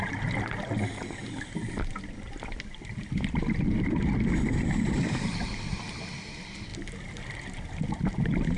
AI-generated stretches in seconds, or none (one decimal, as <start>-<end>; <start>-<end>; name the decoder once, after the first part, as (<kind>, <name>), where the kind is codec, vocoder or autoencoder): none